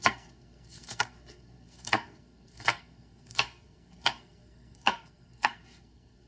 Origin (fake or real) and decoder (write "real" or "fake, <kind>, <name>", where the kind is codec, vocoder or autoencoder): fake, codec, SNAC